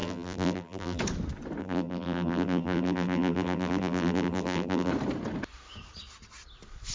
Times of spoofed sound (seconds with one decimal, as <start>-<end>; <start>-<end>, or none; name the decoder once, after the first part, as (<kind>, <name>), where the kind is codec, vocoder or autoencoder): 0.0-1.0 (vocoder, BigVGAN v2); 1.6-4.9